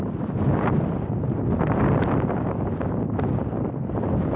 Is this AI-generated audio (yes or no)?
no